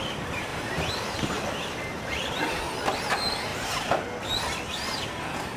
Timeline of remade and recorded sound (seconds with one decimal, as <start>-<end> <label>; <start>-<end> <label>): 0.0-0.5 recorded; 0.5-2.6 remade; 2.6-5.6 recorded